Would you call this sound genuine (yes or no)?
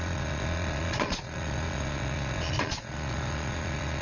no